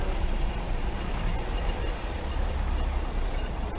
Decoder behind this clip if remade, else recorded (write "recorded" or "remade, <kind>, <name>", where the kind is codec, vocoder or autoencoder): recorded